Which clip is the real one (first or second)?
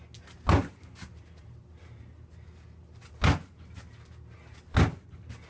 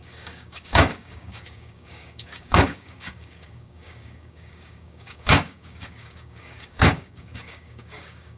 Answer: first